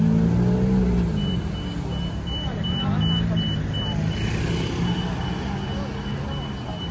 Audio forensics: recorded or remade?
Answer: recorded